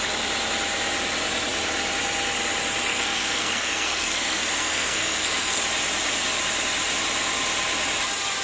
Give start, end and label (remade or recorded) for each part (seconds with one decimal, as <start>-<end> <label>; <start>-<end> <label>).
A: 0.0-2.9 recorded; 2.9-5.6 remade; 5.6-8.4 recorded